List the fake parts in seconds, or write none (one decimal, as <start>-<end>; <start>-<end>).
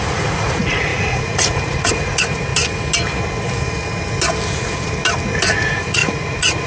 0.0-2.5; 4.5-5.0; 5.5-6.7